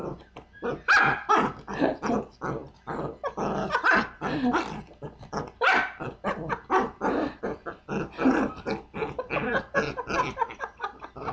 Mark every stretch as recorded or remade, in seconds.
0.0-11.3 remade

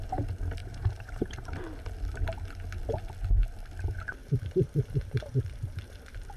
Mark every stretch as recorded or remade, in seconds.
0.0-0.6 recorded; 0.6-1.6 remade; 1.6-4.2 recorded; 4.2-5.8 remade; 5.8-6.4 recorded